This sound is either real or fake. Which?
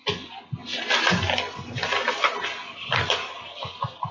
real